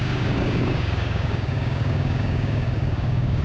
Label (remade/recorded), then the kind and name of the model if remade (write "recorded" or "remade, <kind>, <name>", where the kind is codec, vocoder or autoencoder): remade, codec, DAC